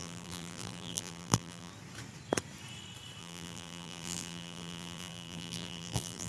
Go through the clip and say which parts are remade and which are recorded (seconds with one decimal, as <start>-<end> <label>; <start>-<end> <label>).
0.0-1.7 remade; 1.7-3.2 recorded; 3.2-6.3 remade

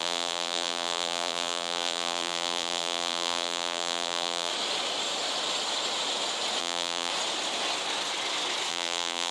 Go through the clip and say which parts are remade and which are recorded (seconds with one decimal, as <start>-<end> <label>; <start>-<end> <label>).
0.0-4.5 remade; 4.5-6.6 recorded; 6.6-7.1 remade; 7.1-8.7 recorded; 8.7-9.3 remade

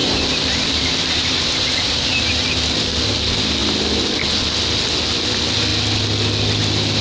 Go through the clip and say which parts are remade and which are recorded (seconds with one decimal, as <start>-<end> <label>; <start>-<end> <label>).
0.0-2.3 remade; 2.3-7.0 recorded

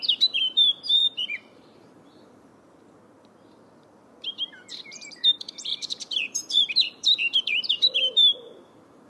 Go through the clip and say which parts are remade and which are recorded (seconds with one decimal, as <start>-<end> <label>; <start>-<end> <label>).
0.0-2.5 remade; 2.5-4.7 recorded; 4.7-9.1 remade